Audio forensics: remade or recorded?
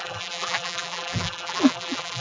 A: remade